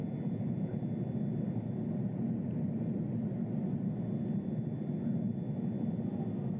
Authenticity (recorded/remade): recorded